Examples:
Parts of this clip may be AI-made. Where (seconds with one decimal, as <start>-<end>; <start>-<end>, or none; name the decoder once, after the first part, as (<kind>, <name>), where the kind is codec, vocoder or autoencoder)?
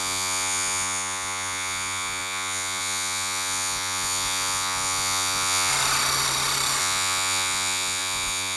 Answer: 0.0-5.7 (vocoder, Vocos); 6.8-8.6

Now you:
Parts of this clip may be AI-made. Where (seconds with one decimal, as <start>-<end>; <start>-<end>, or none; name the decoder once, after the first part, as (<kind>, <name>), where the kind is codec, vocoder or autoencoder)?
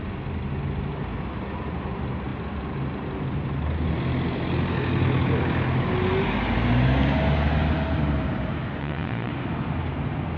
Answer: 8.8-9.3 (vocoder, Vocos)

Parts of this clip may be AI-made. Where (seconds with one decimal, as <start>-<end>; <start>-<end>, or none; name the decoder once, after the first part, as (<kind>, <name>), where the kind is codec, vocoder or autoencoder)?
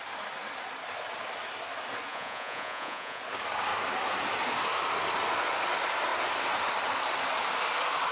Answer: 2.1-3.2 (vocoder, Vocos)